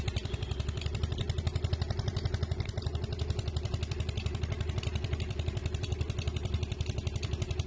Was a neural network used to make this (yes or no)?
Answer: no